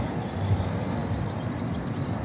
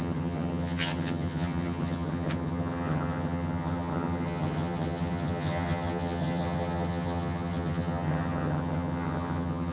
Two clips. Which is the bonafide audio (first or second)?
first